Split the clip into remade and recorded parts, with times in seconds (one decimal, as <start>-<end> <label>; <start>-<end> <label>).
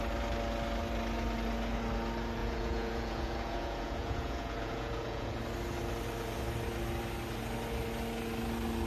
0.0-2.4 recorded; 2.4-5.4 remade; 5.4-8.9 recorded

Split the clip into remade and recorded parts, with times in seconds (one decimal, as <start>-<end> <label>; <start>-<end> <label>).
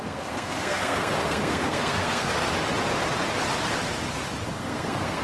0.0-2.5 remade; 2.5-4.6 recorded; 4.6-5.2 remade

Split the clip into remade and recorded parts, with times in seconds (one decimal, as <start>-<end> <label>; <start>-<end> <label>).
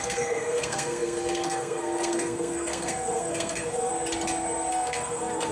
0.0-3.9 remade; 3.9-4.7 recorded; 4.7-5.5 remade